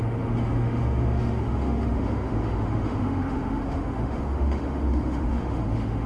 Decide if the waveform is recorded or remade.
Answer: remade